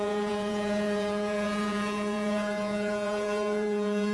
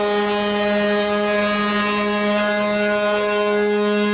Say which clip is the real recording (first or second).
second